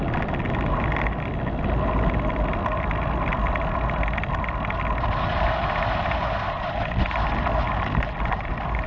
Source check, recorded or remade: recorded